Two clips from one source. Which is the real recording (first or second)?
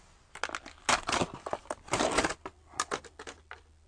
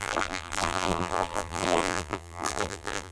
first